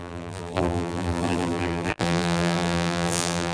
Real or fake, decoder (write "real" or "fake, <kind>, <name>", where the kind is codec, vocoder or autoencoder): fake, vocoder, BigVGAN v2